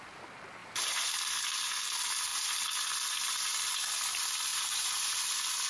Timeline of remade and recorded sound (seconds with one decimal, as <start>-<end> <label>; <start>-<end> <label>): 0.0-0.6 recorded; 0.6-1.2 remade; 1.2-4.5 recorded; 4.5-5.2 remade; 5.2-5.7 recorded